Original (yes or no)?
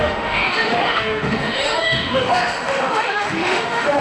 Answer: no